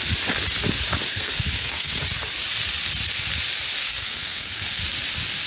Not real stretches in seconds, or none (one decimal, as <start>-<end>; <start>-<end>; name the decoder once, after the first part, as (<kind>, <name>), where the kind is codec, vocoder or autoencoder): 1.1-2.0 (codec, SNAC); 3.8-4.8